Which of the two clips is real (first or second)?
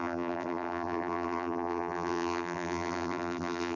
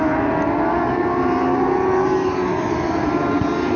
second